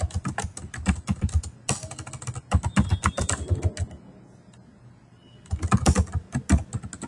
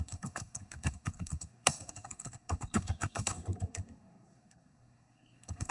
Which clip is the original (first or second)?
first